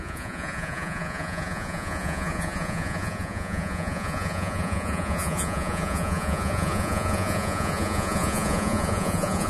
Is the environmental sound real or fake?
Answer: fake